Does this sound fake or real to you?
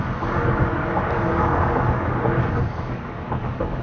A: fake